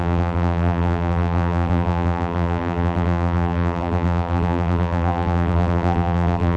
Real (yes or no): no